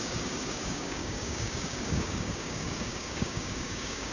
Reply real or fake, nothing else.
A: fake